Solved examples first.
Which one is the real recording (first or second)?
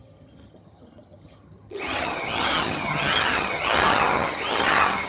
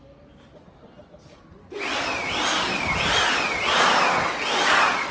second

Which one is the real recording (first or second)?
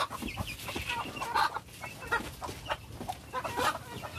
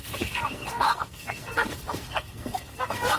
first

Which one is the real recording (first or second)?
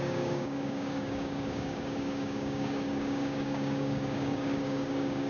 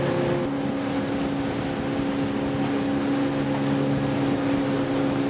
second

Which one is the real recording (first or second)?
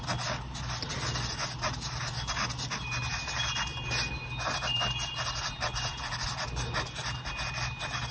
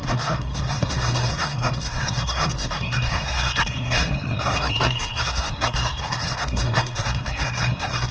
first